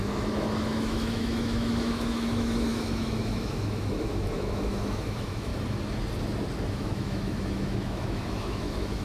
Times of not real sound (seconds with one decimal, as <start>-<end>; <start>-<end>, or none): 0.0-5.5; 6.7-9.0